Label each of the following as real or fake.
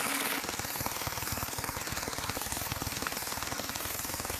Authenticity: fake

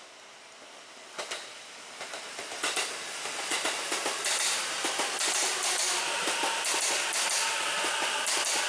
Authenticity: real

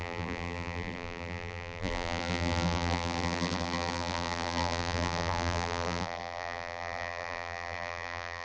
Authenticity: fake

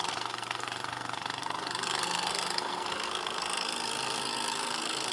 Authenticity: fake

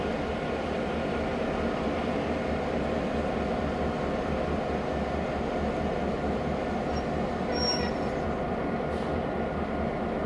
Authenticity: fake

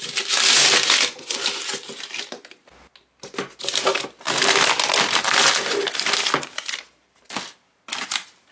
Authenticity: real